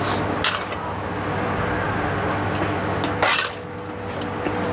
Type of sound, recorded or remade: recorded